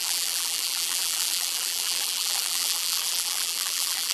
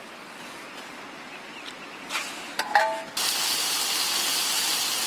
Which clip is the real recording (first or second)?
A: second